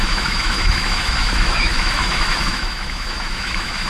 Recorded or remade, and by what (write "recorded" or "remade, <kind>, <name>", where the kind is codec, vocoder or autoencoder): remade, autoencoder, DAC-VAE